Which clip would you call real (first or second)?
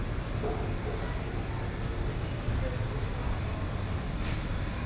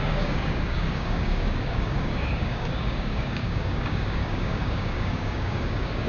first